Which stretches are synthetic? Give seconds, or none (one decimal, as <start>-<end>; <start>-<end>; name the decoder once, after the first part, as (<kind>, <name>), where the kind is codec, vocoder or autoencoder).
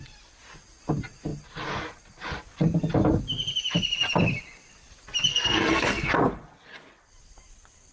5.3-6.1 (codec, SNAC)